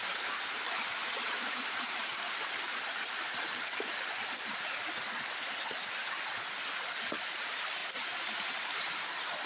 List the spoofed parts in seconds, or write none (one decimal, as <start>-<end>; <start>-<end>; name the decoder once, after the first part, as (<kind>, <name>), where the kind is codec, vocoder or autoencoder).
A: 1.0-2.4 (vocoder, BigVGAN v2); 7.8-9.0